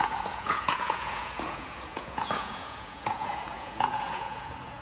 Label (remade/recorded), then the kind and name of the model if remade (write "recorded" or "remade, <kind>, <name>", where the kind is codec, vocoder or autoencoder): remade, vocoder, Vocos